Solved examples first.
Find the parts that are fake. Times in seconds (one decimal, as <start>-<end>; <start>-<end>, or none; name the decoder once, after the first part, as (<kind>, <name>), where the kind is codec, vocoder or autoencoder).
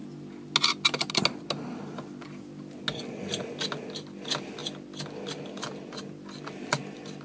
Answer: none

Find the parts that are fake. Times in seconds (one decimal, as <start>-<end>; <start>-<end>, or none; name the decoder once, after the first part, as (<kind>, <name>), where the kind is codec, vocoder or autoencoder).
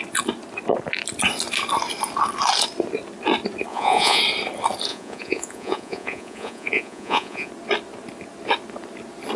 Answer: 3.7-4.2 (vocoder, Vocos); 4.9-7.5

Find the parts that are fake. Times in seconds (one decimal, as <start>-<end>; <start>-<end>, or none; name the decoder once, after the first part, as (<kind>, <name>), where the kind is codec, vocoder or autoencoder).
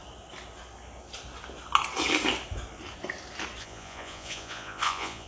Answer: 3.6-5.3 (vocoder, Vocos)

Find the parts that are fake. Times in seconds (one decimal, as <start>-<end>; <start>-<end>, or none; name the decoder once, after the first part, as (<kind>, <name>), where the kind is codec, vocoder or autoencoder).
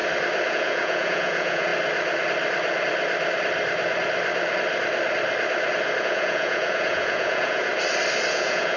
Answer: 0.5-1.7 (vocoder, Vocos); 6.0-7.7; 8.3-8.8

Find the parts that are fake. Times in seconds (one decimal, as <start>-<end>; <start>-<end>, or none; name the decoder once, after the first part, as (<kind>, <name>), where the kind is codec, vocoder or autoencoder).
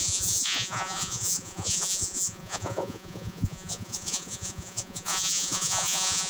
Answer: 0.0-6.3 (vocoder, Vocos)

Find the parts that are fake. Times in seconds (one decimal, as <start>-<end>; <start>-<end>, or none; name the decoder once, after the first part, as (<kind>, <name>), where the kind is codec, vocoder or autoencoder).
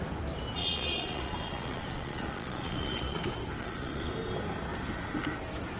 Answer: 0.6-3.2 (vocoder, Vocos); 3.6-4.1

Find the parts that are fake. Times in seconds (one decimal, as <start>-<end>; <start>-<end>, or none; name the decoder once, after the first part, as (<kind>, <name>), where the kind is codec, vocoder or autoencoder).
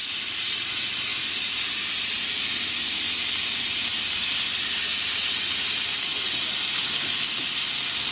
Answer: none